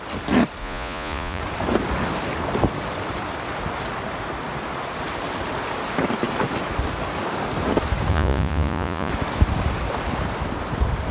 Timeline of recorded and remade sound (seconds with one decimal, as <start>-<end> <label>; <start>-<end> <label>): 0.0-0.6 recorded; 0.6-1.4 remade; 1.4-8.1 recorded; 8.1-9.1 remade; 9.1-11.1 recorded